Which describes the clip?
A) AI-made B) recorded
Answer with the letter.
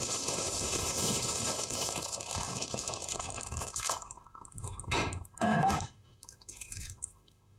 A